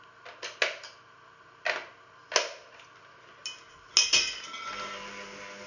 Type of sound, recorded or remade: recorded